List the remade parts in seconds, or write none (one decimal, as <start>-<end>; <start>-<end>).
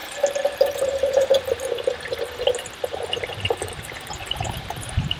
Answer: 0.0-1.3; 4.3-5.2